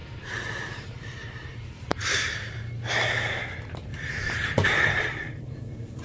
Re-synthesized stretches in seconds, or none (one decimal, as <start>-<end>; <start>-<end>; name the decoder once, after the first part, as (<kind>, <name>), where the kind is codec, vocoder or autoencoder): 0.0-2.6 (vocoder, BigVGAN v2); 3.9-6.0